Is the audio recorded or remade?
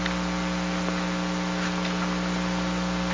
recorded